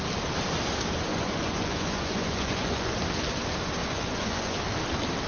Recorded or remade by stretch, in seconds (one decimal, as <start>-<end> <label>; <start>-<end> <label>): 0.0-1.1 recorded; 1.1-2.9 remade; 2.9-3.8 recorded; 3.8-4.6 remade; 4.6-5.3 recorded